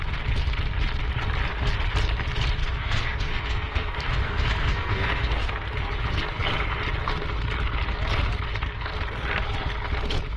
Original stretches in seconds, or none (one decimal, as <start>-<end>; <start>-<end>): 0.0-2.6; 5.5-10.4